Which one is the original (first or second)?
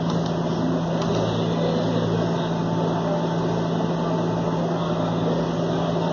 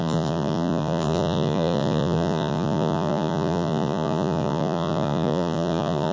first